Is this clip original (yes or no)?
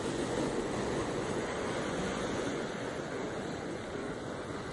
no